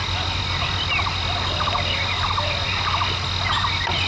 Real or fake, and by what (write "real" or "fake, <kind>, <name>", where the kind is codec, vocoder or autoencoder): real